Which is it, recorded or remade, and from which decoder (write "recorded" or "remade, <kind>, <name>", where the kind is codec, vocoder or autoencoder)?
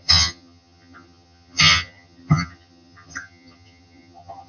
remade, vocoder, HiFi-GAN